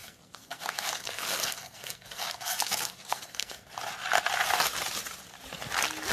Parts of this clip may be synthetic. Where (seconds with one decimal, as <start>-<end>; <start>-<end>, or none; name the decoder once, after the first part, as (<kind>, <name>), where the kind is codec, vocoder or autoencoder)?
0.0-3.7 (codec, SNAC)